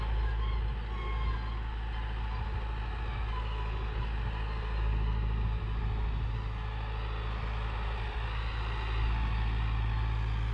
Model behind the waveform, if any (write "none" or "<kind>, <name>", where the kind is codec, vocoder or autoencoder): none